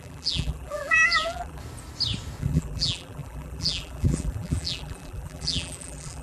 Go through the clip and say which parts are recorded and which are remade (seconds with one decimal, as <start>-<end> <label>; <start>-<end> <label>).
0.0-1.6 remade; 1.6-2.4 recorded; 2.4-6.2 remade